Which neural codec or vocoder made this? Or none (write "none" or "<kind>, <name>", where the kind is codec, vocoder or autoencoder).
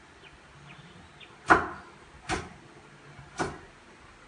none